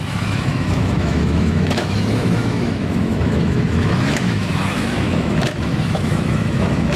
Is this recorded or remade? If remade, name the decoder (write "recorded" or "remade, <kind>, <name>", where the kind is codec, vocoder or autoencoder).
remade, autoencoder, DAC-VAE